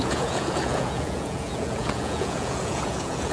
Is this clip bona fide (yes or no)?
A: no